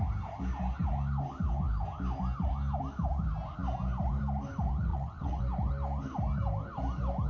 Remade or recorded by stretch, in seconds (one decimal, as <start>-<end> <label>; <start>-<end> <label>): 0.0-4.9 recorded; 4.9-5.4 remade; 5.4-7.3 recorded